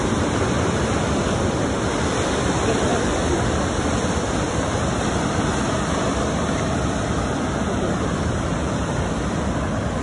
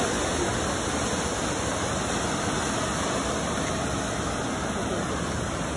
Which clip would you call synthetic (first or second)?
first